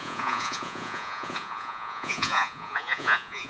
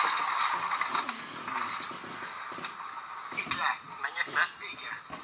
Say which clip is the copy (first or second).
first